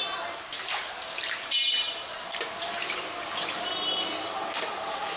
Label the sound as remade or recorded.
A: recorded